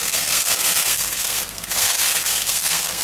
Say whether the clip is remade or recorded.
remade